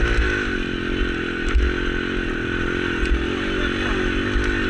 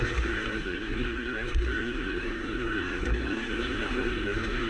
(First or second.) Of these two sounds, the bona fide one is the first